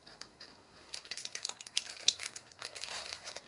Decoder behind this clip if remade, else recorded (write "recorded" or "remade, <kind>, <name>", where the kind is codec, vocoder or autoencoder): remade, codec, SNAC